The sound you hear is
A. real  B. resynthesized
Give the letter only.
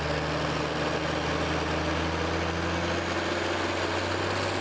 A